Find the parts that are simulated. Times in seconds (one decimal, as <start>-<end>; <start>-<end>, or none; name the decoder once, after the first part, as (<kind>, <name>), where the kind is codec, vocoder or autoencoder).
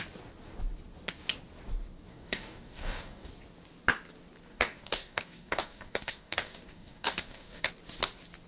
2.1-3.3 (codec, DAC); 4.5-7.7